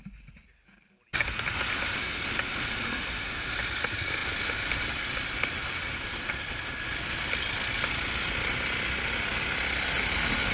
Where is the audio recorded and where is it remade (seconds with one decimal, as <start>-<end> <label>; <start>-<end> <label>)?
0.0-4.2 recorded; 4.2-6.8 remade; 6.8-10.5 recorded